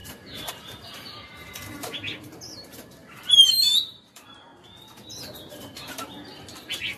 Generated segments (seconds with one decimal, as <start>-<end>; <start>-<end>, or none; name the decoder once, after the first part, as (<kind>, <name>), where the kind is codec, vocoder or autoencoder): 0.0-4.5 (vocoder, BigVGAN v2); 5.5-7.0